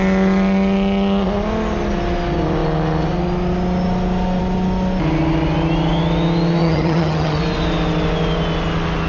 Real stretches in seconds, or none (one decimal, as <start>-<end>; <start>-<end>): 0.0-6.6; 7.4-9.1